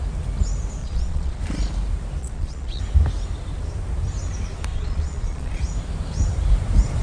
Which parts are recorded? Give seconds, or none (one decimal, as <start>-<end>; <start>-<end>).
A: 0.0-0.8; 1.4-2.2; 2.8-4.7; 5.6-7.0